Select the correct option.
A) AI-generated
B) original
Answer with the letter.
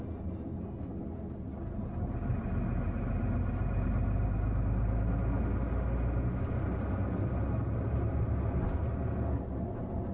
B